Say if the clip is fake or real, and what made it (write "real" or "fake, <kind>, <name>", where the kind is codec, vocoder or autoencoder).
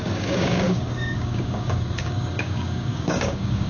fake, codec, DAC